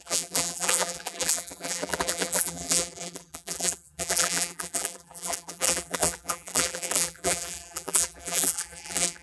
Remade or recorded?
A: remade